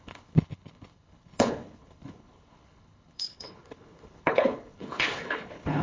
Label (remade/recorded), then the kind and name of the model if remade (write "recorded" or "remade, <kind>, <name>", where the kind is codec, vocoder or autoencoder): remade, codec, HILCodec